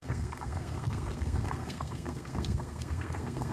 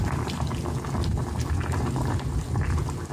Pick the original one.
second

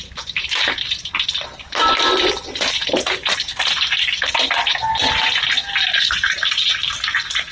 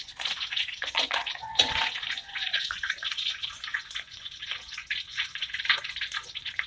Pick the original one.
first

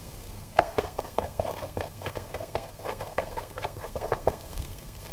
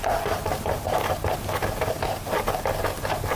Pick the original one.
second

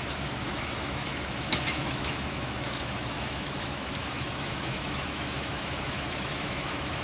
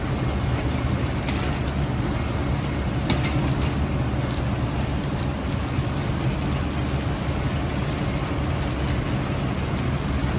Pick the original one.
second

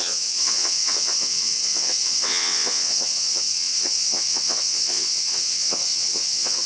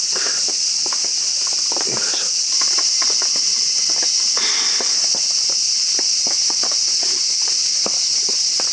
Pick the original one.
second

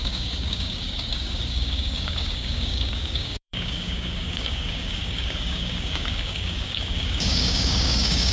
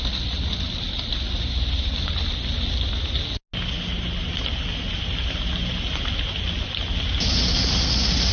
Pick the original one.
second